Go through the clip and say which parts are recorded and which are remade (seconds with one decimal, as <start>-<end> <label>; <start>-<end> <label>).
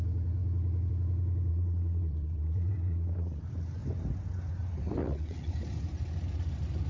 0.0-1.5 recorded; 1.5-3.4 remade; 3.4-5.0 recorded; 5.0-5.5 remade; 5.5-6.9 recorded